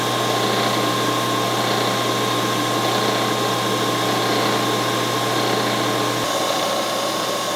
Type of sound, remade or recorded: recorded